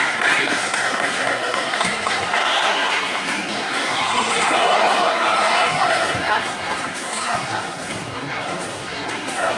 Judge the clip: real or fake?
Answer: fake